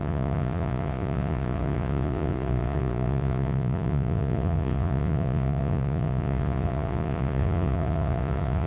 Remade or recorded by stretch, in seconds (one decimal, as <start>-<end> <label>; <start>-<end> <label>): 0.0-8.7 remade